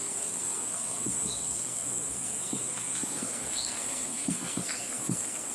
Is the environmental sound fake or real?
fake